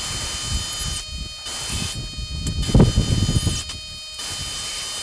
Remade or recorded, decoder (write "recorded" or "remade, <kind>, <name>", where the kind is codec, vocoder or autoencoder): recorded